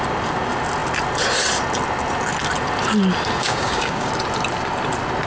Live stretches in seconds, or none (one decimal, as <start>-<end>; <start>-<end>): 0.0-3.4; 4.1-5.3